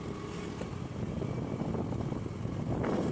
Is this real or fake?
real